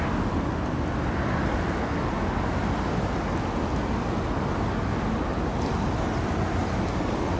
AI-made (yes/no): no